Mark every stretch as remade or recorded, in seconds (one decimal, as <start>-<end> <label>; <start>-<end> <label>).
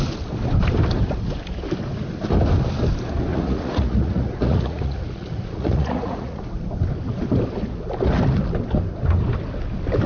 0.0-3.3 recorded; 3.3-6.4 remade; 6.4-10.1 recorded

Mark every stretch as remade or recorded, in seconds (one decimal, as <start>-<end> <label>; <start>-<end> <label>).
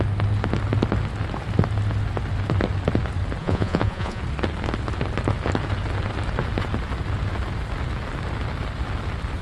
0.0-3.4 recorded; 3.4-4.2 remade; 4.2-9.4 recorded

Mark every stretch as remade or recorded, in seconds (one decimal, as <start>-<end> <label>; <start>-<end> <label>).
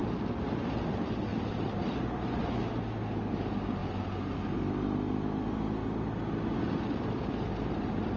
0.0-8.2 recorded